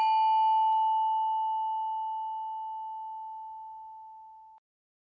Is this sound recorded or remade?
recorded